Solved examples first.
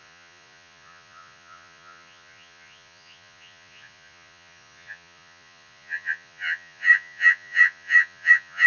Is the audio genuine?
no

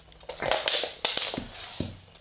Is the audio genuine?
yes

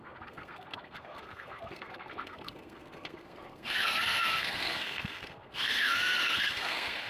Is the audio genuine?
no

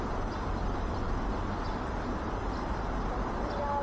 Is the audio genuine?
yes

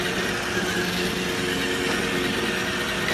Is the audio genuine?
yes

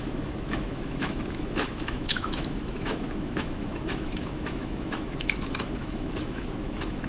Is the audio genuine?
no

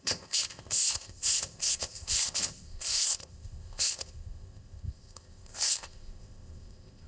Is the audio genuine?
no